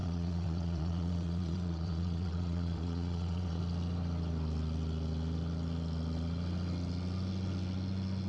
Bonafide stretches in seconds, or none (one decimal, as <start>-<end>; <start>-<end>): 3.6-8.3